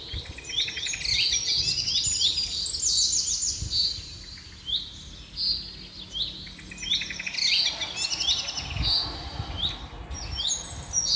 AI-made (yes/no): no